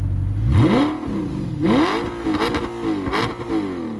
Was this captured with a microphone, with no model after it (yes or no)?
yes